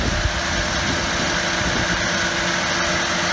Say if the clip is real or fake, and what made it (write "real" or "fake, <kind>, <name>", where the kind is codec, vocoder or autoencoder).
real